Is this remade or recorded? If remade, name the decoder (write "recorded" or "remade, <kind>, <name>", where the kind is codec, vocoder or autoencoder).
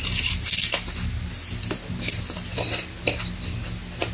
recorded